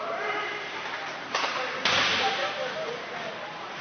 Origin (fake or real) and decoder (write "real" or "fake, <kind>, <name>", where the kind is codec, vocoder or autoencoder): fake, vocoder, BigVGAN v2